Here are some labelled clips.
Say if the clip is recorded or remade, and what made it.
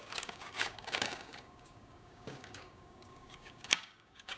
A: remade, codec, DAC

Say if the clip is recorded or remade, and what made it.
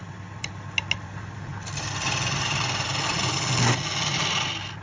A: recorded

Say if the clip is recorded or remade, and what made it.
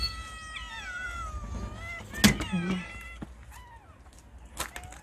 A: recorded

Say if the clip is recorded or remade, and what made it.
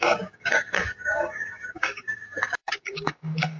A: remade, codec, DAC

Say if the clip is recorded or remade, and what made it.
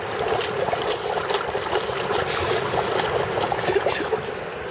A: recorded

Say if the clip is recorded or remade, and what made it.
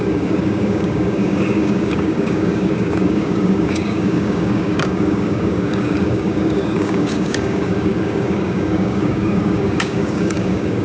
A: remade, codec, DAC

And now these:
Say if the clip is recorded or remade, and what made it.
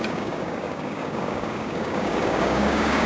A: remade, codec, DAC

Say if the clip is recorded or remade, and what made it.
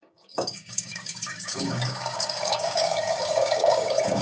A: remade, codec, DAC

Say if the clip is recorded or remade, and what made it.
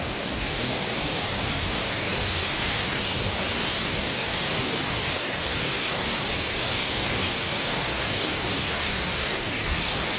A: remade, codec, DAC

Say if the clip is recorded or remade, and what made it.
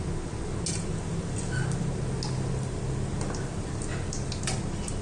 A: recorded